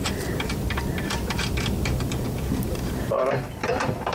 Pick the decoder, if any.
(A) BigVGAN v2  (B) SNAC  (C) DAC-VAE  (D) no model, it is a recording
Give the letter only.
A